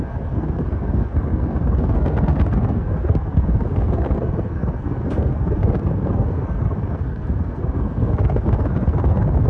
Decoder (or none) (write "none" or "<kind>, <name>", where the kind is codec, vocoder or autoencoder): codec, SNAC